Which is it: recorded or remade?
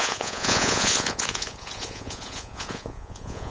remade